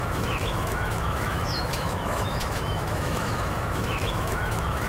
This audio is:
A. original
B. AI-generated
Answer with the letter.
B